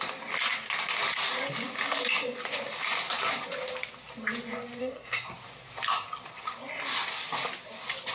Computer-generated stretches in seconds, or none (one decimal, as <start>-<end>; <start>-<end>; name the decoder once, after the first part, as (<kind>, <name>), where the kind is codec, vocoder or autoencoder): 4.8-5.3 (codec, SNAC)